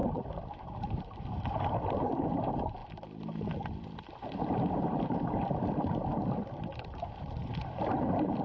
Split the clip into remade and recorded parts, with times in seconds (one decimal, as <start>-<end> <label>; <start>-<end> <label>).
0.0-8.4 remade